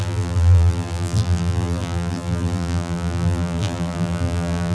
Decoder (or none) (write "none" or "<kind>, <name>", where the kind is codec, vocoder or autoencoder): vocoder, BigVGAN v2